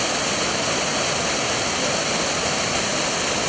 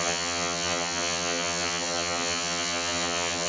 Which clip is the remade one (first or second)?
second